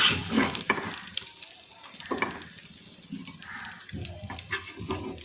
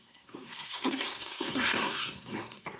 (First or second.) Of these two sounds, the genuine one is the first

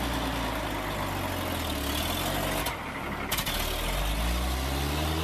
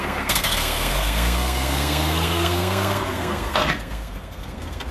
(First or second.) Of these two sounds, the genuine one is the first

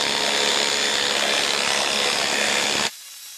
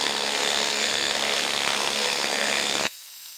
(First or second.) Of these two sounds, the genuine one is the first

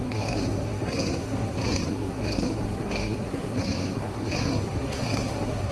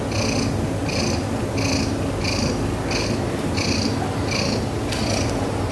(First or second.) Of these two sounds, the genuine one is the second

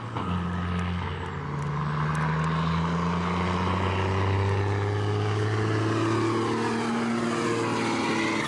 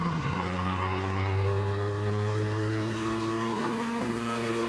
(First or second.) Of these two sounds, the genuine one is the first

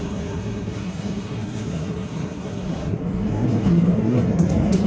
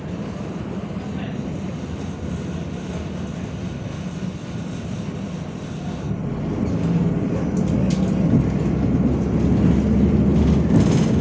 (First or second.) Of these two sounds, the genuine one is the second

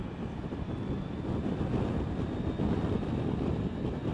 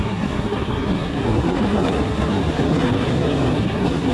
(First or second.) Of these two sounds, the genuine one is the first